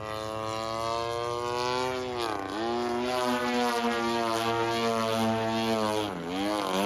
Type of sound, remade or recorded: recorded